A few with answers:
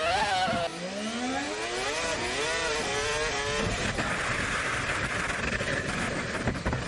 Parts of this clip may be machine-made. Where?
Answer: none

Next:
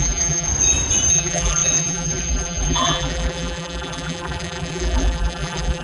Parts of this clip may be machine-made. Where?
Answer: 0.0-0.5 (vocoder, BigVGAN v2); 1.1-5.8

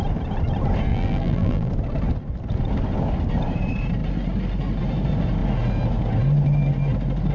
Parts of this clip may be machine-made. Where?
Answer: 0.9-1.7 (vocoder, BigVGAN v2)

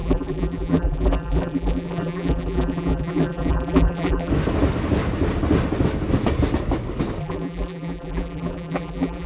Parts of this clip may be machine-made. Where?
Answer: 0.0-4.3 (vocoder, BigVGAN v2); 7.2-9.3